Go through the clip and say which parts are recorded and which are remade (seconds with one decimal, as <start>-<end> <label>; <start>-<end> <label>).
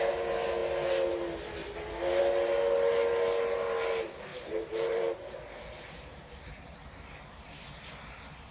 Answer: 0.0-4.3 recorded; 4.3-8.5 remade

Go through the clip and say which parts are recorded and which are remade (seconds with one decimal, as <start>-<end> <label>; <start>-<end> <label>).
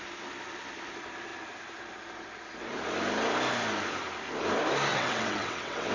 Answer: 0.0-4.9 recorded; 4.9-5.9 remade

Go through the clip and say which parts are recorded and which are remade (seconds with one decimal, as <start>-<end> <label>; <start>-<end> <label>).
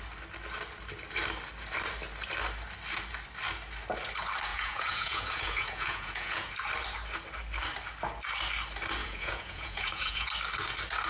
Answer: 0.0-4.5 recorded; 4.5-6.5 remade; 6.5-9.0 recorded; 9.0-10.3 remade; 10.3-11.1 recorded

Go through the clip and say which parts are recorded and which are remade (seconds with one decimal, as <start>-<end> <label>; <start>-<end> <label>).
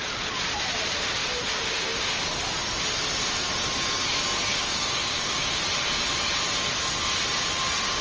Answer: 0.0-4.5 recorded; 4.5-5.6 remade; 5.6-8.0 recorded